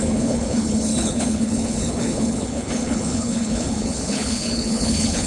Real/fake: fake